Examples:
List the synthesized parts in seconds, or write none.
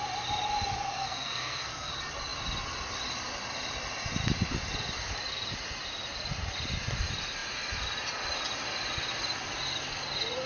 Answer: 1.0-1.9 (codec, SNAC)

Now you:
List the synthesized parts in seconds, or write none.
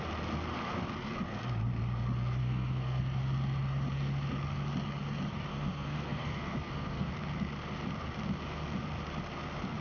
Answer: 2.4-3.0 (codec, SNAC); 5.5-7.1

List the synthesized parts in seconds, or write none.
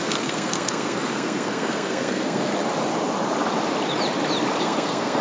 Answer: 0.0-2.5 (codec, SNAC); 4.6-5.2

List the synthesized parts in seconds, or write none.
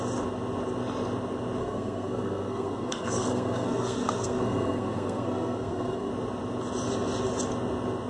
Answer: 1.6-6.1 (codec, SNAC)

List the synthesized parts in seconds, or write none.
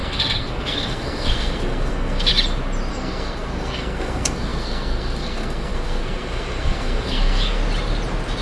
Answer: 0.0-2.3 (codec, SNAC); 2.9-7.6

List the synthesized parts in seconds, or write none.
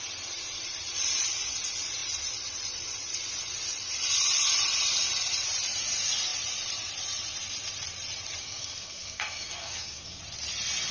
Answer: 8.4-10.2 (codec, SNAC)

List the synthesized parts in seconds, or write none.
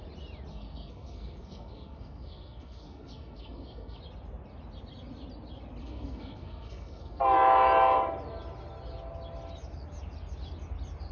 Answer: 0.5-4.0 (codec, SNAC); 5.8-7.2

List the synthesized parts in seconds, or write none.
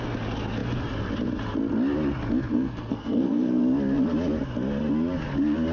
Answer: 2.5-3.6 (codec, SNAC)